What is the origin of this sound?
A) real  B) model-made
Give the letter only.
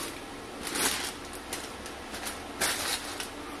A